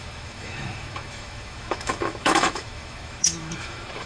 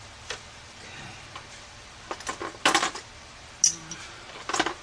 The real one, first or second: second